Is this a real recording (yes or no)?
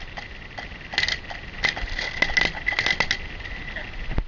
yes